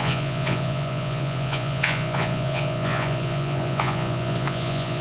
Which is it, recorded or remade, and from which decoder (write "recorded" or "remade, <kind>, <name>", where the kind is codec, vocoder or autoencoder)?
remade, vocoder, Vocos